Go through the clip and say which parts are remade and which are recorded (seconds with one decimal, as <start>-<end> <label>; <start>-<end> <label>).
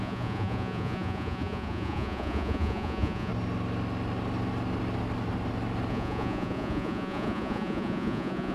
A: 0.0-3.3 remade; 3.3-5.9 recorded; 5.9-8.5 remade